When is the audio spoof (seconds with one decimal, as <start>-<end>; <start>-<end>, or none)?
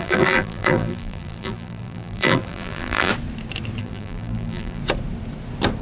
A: 0.0-3.1; 3.8-4.8